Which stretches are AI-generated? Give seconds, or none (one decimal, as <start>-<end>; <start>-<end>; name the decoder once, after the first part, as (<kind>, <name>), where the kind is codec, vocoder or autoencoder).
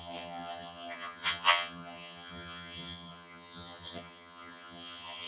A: 0.0-5.3 (vocoder, HiFi-GAN)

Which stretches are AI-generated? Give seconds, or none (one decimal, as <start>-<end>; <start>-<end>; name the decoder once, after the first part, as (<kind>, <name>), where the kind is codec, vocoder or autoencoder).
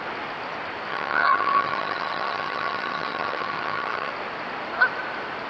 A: 0.9-4.1 (vocoder, HiFi-GAN)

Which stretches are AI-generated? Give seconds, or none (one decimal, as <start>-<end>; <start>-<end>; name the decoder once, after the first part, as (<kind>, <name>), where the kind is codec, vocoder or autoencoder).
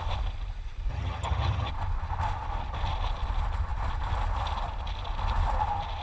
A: 0.9-1.7 (vocoder, HiFi-GAN)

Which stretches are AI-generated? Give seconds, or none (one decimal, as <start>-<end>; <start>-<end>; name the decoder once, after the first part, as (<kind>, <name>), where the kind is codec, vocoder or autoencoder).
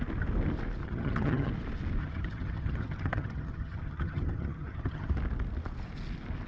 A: 0.8-1.5 (vocoder, HiFi-GAN); 2.0-5.1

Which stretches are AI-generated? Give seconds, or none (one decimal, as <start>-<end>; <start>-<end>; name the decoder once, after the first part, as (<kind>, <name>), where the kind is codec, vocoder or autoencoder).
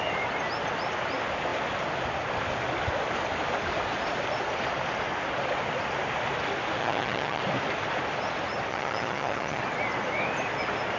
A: 6.8-7.4 (vocoder, HiFi-GAN); 8.7-9.6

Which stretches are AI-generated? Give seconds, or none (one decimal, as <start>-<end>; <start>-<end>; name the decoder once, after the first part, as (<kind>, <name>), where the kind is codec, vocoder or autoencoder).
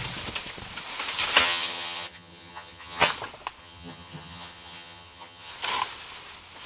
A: 1.4-3.1 (vocoder, HiFi-GAN); 3.6-5.5